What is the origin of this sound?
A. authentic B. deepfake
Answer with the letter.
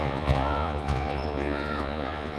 B